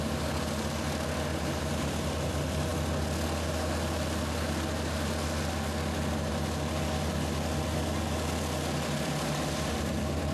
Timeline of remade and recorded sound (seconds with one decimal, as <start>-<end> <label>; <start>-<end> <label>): 0.0-1.3 recorded; 1.3-2.3 remade; 2.3-10.3 recorded